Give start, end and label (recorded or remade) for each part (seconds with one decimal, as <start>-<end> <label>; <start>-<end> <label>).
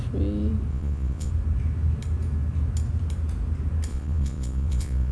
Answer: 0.0-0.7 recorded; 0.7-1.3 remade; 1.3-3.9 recorded; 3.9-5.1 remade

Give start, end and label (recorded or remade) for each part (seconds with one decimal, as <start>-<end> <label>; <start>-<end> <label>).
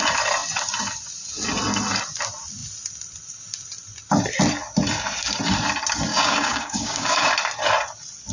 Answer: 0.0-6.1 recorded; 6.1-7.3 remade; 7.3-8.3 recorded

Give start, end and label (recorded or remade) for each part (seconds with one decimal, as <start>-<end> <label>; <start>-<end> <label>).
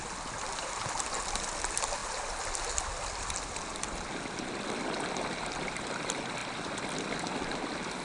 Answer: 0.0-8.0 recorded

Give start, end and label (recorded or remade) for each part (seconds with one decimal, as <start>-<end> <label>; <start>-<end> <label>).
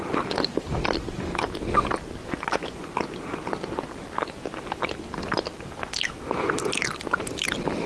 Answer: 0.0-2.2 recorded; 2.2-2.9 remade; 2.9-7.9 recorded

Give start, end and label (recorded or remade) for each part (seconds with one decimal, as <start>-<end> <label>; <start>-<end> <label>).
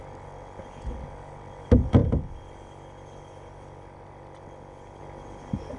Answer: 0.0-5.8 recorded